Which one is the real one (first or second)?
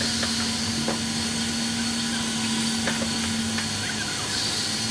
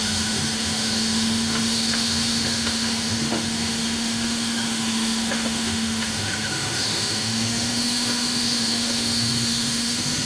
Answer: first